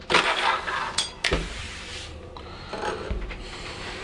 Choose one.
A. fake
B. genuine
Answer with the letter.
A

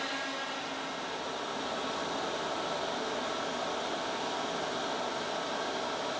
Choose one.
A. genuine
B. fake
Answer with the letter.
A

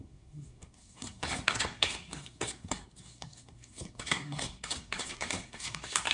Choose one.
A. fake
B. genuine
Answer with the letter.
A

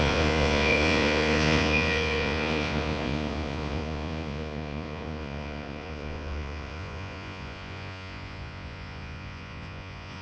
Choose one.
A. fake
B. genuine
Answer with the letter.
A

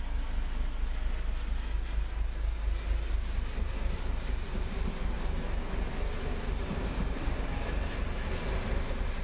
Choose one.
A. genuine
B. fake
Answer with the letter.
A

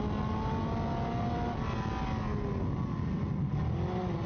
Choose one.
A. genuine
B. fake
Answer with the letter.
A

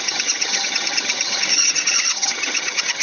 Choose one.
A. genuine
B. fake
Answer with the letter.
B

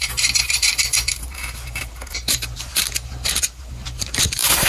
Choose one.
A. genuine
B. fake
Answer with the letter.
B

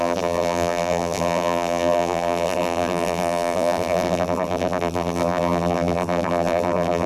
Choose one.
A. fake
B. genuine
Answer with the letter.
A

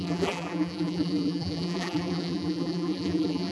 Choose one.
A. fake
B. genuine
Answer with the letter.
A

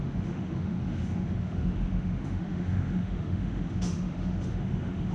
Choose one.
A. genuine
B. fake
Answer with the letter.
B